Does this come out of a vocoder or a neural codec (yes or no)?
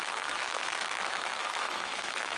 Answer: yes